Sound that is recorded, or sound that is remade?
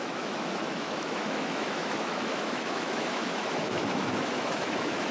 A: remade